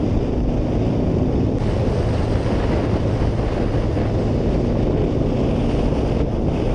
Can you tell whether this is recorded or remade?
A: recorded